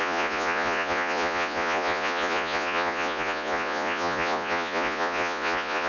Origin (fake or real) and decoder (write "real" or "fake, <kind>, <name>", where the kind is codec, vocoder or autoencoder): fake, vocoder, Vocos